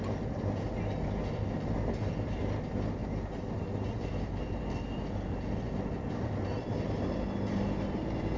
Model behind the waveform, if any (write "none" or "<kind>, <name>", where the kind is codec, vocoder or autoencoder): none